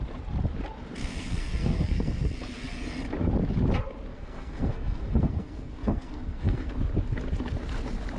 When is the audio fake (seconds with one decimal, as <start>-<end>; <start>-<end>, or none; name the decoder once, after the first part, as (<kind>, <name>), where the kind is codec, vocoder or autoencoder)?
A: 1.0-2.3 (codec, SNAC); 4.1-6.7